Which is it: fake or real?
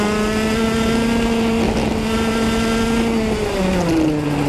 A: real